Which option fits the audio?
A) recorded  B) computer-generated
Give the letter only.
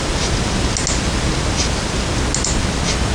A